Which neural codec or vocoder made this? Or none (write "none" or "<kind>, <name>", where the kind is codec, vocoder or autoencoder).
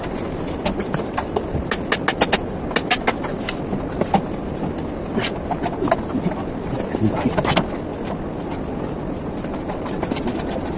none